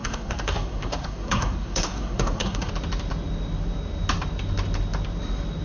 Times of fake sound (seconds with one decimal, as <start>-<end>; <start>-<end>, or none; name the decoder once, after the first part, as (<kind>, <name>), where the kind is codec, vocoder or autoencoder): 0.0-2.7 (codec, SNAC)

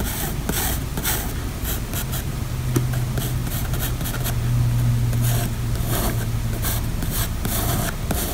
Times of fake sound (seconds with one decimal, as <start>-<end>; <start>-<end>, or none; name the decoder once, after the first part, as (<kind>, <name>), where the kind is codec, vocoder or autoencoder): none